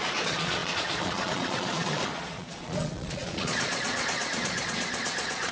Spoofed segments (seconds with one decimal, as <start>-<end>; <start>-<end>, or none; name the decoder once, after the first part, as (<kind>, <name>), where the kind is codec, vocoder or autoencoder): 0.0-5.5 (vocoder, Vocos)